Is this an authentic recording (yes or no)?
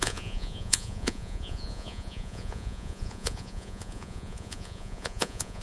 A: no